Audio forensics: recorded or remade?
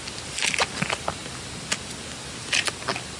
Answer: recorded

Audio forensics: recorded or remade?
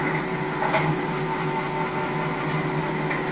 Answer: recorded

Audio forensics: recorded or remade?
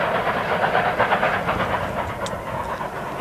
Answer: recorded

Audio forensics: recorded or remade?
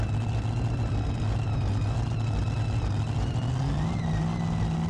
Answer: recorded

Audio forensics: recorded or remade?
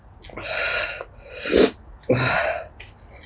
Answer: recorded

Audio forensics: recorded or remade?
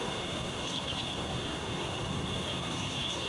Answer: remade